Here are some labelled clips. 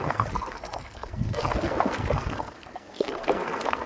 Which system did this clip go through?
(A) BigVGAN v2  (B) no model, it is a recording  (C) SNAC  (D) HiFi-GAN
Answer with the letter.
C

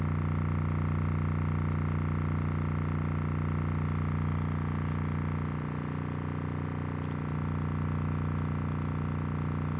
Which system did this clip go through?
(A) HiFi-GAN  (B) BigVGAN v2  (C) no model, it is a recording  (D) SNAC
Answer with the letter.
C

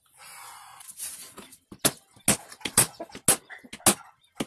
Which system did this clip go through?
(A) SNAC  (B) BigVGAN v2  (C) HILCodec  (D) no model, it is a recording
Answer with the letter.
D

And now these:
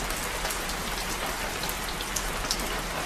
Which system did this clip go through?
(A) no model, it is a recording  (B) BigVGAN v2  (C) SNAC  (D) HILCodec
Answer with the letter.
A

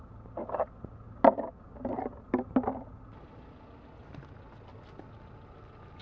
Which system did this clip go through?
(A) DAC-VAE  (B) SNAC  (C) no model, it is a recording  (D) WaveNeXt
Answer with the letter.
C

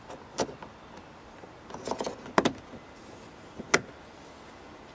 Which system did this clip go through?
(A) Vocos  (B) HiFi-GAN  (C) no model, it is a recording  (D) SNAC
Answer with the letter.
C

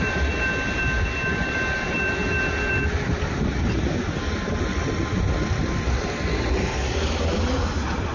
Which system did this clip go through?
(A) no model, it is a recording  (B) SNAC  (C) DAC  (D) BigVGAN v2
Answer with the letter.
A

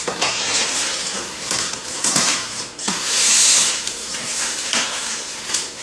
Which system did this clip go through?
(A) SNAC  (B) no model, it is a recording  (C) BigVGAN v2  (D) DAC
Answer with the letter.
A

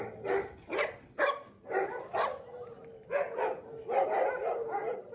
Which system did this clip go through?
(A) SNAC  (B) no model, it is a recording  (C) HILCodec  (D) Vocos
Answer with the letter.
B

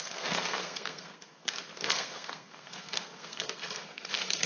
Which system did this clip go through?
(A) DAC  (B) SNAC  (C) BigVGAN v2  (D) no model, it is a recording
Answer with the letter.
B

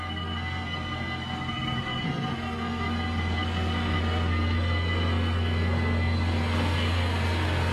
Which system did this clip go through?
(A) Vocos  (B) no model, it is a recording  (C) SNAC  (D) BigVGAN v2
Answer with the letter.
C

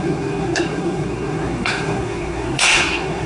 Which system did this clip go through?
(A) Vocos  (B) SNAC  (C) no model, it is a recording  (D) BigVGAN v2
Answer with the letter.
B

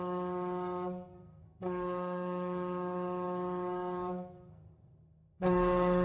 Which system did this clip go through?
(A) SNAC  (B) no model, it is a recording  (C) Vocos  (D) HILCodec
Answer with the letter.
A